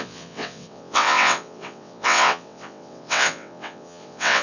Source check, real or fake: fake